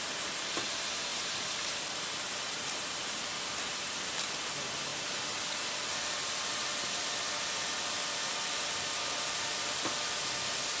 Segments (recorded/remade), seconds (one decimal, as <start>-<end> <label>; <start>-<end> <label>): 0.0-4.9 remade; 4.9-5.7 recorded; 5.7-10.8 remade